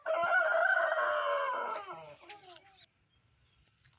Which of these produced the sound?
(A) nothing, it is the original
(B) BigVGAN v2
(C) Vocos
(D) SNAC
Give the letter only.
A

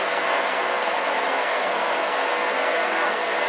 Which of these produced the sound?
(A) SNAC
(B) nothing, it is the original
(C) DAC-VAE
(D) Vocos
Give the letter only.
A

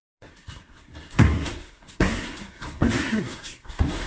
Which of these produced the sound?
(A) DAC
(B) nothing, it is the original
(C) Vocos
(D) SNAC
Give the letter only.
D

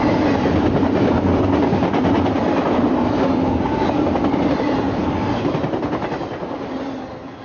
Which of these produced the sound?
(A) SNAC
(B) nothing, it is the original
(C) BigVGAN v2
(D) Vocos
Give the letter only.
B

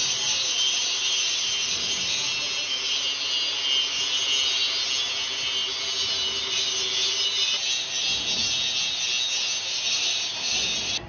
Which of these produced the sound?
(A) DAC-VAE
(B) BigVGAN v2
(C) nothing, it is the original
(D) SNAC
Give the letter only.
C